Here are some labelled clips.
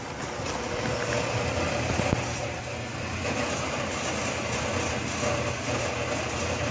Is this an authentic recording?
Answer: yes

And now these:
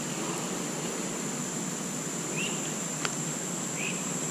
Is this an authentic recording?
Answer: yes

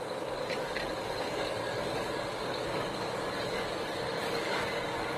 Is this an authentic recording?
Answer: no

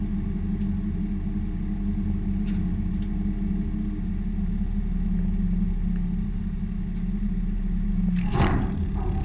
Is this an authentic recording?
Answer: yes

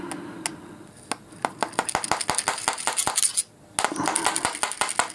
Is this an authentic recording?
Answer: yes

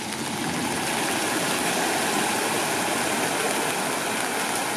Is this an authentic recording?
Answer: yes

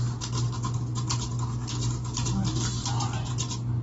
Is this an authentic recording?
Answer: yes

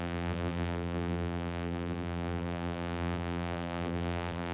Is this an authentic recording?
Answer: no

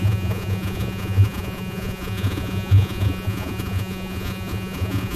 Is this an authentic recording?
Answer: no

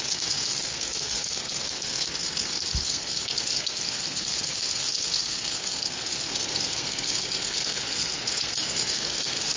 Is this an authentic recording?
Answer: no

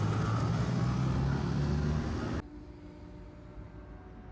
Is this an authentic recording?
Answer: yes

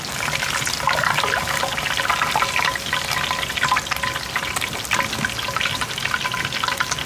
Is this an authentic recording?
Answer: yes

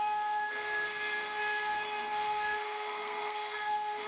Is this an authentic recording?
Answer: no